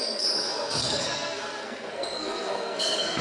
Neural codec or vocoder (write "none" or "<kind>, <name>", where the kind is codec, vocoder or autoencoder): codec, SNAC